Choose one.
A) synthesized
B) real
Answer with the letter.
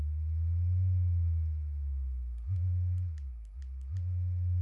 B